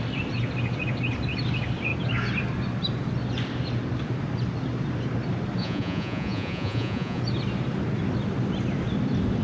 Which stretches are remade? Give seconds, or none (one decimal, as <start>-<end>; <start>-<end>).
5.6-7.2